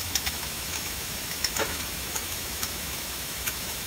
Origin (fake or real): fake